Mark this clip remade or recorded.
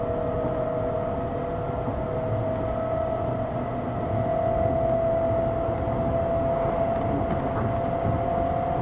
recorded